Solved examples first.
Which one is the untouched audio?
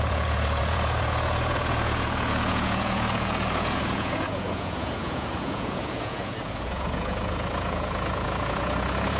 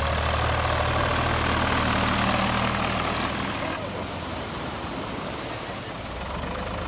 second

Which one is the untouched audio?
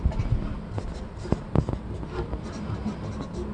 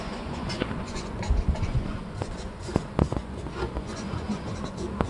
first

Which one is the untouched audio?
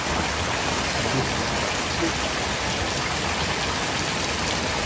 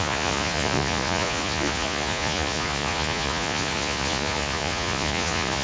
first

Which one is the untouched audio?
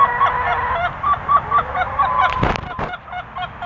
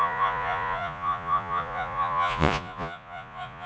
first